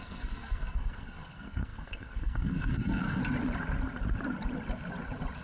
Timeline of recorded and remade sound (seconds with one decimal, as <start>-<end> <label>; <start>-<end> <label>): 0.0-3.2 remade; 3.2-5.4 recorded